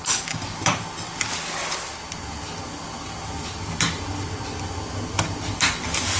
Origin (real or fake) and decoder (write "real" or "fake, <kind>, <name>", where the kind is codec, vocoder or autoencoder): real